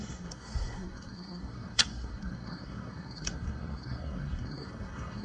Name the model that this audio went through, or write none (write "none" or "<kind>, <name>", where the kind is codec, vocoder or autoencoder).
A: codec, SNAC